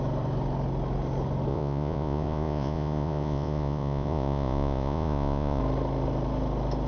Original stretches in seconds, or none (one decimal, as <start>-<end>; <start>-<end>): 0.0-1.5; 5.6-6.9

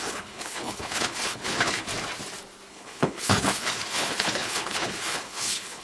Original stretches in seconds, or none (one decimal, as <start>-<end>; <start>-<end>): 1.9-2.7

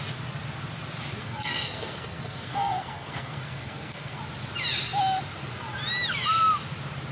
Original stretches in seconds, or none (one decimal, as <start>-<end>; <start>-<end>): 0.0-1.2; 4.2-7.1

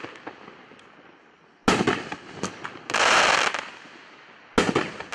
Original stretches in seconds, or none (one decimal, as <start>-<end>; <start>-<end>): 0.0-5.1